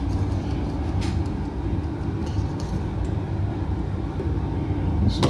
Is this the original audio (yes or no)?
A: yes